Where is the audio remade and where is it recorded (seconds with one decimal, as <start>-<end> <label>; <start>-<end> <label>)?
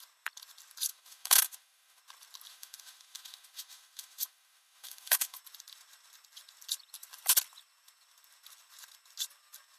0.0-0.9 recorded; 0.9-2.0 remade; 2.0-2.5 recorded; 2.5-5.4 remade; 5.4-9.8 recorded